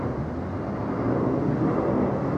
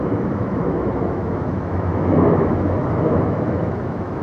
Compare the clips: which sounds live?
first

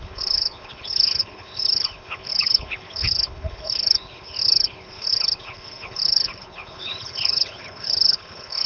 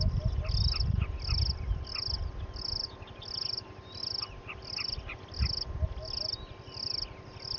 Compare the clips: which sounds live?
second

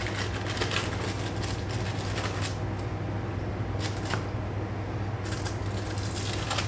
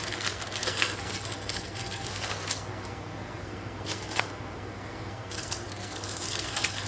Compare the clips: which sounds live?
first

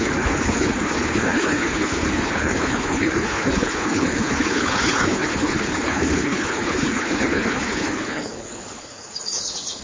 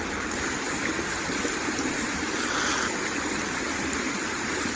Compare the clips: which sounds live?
second